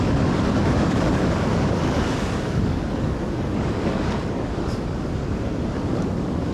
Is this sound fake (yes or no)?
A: yes